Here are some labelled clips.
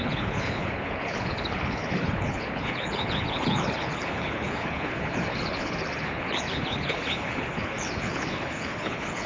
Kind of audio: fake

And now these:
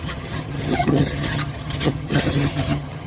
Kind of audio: fake